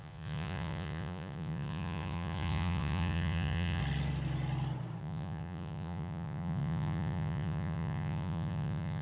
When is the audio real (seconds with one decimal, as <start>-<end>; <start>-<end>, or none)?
3.8-5.0